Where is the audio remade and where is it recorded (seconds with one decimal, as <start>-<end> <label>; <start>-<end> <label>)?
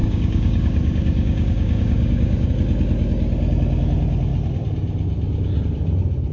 0.0-2.5 remade; 2.5-6.3 recorded